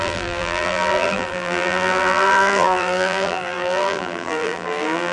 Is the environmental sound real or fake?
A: fake